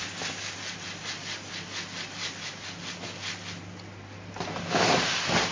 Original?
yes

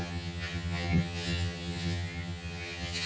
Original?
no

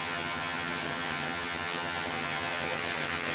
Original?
no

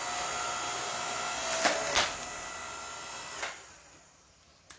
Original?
yes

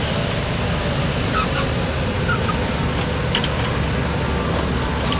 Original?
yes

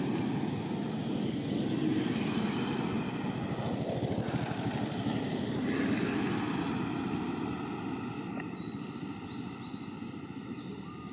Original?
yes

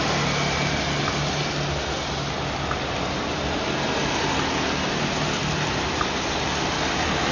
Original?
yes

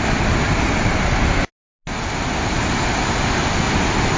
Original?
yes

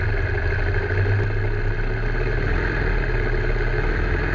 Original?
yes